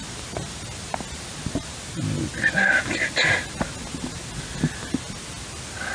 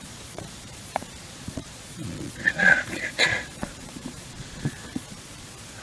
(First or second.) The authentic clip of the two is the first